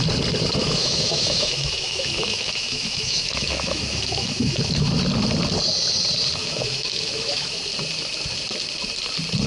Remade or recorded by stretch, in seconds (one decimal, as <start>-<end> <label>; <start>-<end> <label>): 0.0-0.6 recorded; 0.6-4.9 remade; 4.9-6.4 recorded; 6.4-7.6 remade; 7.6-9.5 recorded